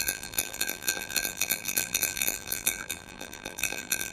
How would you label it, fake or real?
fake